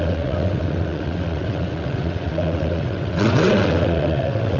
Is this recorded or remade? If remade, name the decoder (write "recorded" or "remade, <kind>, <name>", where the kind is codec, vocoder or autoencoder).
remade, vocoder, WaveNeXt